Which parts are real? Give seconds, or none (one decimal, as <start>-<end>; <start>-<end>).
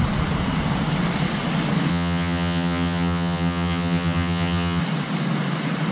0.0-1.9; 4.8-5.9